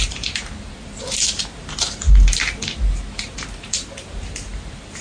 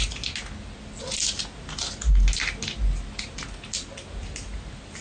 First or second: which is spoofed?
first